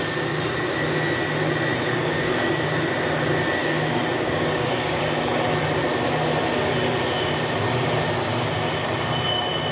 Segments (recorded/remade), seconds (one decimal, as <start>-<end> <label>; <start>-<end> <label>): 0.0-1.8 recorded; 1.8-2.5 remade; 2.5-3.6 recorded; 3.6-5.0 remade; 5.0-9.7 recorded